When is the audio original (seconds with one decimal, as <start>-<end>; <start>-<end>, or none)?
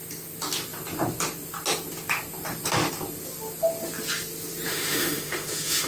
0.0-4.7